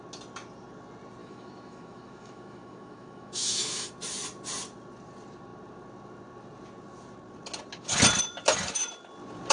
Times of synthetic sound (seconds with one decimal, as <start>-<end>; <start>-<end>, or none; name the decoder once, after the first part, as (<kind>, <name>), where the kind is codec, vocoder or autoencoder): 1.2-3.9 (autoencoder, DAC-VAE)